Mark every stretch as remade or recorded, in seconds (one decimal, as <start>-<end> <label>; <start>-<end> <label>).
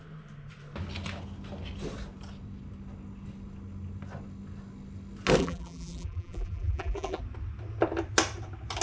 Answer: 0.0-5.4 recorded; 5.4-7.2 remade; 7.2-8.8 recorded